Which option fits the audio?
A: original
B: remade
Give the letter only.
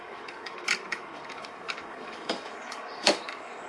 B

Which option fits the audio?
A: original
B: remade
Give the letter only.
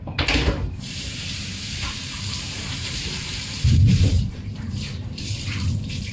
B